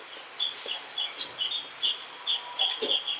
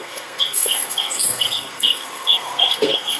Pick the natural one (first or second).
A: first